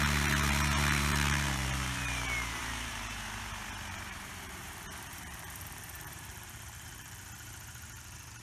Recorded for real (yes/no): no